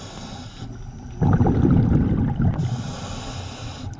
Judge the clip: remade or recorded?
recorded